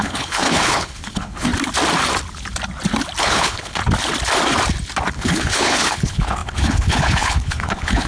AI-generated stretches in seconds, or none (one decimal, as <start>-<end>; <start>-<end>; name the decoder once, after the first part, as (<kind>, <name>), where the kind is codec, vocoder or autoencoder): 0.0-1.5 (codec, HILCodec); 3.2-3.8; 5.1-8.1